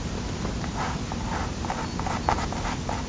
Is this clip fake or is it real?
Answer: real